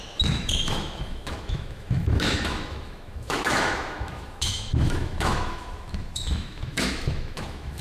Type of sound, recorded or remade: remade